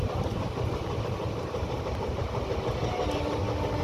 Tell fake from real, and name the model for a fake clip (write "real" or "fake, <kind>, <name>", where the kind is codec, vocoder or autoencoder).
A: real